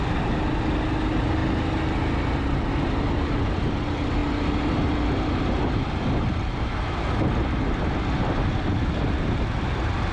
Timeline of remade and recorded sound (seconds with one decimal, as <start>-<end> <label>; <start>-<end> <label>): 0.0-10.1 recorded